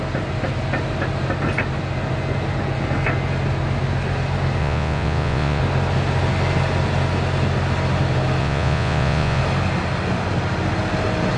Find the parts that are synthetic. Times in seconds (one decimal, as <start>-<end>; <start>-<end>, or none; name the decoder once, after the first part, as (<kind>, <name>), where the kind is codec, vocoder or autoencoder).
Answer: 4.6-5.6 (vocoder, Vocos); 8.4-9.4